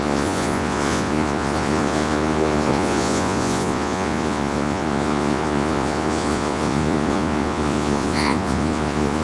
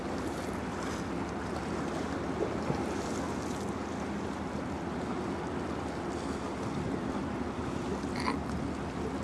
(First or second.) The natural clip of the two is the second